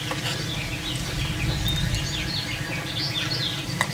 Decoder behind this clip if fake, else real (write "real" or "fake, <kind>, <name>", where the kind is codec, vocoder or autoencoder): real